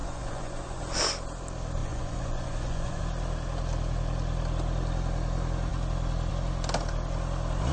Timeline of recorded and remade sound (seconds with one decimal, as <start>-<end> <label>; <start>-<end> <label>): 0.0-0.8 remade; 0.8-1.8 recorded; 1.8-3.0 remade; 3.0-7.7 recorded